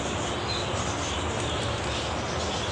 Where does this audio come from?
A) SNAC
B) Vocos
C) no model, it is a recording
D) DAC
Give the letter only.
C